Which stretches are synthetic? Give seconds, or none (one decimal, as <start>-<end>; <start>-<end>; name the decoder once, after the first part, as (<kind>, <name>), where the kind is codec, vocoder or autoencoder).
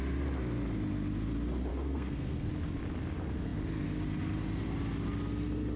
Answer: 1.7-2.5 (codec, SNAC)